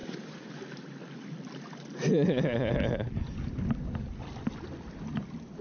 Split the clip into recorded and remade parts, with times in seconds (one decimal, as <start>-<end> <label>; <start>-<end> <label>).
0.0-0.5 remade; 0.5-2.1 recorded; 2.1-2.7 remade; 2.7-5.6 recorded